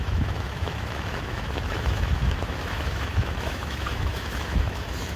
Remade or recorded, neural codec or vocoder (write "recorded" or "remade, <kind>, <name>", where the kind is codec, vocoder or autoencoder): remade, autoencoder, DAC-VAE